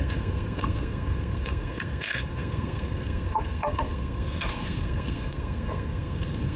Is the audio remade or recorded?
remade